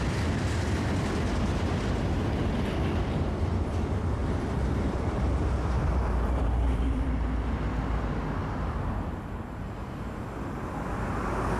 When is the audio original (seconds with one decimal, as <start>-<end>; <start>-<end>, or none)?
0.0-4.2; 7.1-8.4; 8.9-11.6